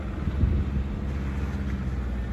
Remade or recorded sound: recorded